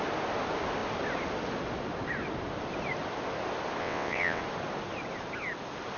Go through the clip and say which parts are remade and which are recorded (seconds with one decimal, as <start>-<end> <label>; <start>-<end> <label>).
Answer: 0.0-3.8 recorded; 3.8-4.4 remade; 4.4-6.0 recorded